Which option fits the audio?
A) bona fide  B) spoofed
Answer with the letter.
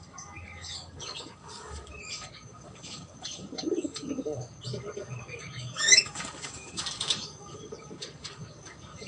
B